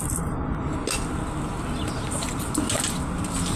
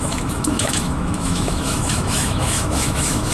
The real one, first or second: first